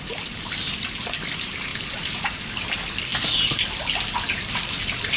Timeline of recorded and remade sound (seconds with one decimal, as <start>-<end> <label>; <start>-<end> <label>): 0.0-5.2 recorded